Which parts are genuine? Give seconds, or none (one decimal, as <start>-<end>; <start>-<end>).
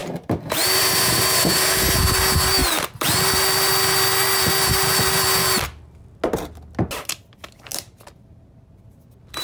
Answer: 0.8-2.6; 3.7-9.4